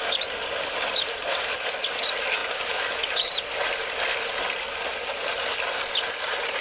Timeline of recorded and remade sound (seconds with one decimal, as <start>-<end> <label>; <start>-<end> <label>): 0.0-6.6 recorded